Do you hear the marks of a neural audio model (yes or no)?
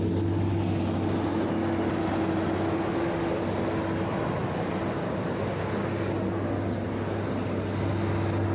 no